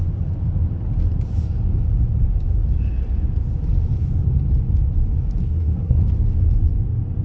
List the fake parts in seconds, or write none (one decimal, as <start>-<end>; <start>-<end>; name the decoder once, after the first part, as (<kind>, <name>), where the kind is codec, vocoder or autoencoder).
5.4-6.0 (codec, SNAC)